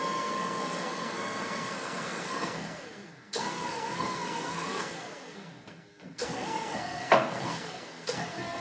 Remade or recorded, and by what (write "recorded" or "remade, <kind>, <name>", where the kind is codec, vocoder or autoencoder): remade, codec, SNAC